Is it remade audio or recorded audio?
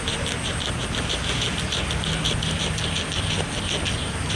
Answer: recorded